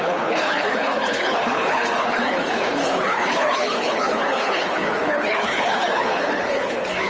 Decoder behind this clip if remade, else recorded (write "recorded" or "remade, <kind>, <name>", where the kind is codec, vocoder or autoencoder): remade, codec, HILCodec